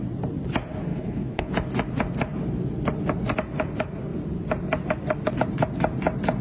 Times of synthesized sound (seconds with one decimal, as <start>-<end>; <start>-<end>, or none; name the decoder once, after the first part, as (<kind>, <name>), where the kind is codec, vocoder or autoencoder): 0.9-1.5 (codec, HILCodec)